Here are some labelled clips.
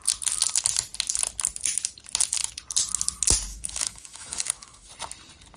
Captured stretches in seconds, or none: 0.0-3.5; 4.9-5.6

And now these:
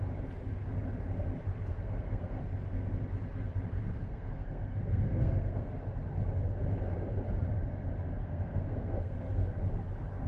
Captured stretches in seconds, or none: 0.0-1.7; 2.4-3.8; 5.8-8.2; 9.6-10.3

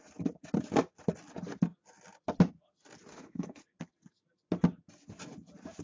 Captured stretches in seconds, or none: 0.0-3.1; 3.6-5.8

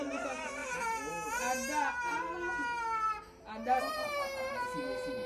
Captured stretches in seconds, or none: 0.0-5.3

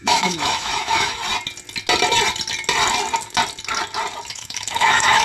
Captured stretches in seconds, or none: 1.2-4.3

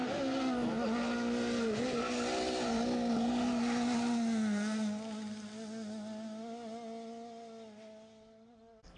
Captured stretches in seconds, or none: 0.0-9.0

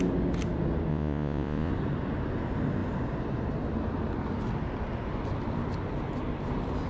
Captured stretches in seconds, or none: 0.0-0.9; 1.7-6.9

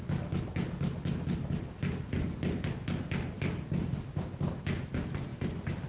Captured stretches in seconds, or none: 0.0-5.9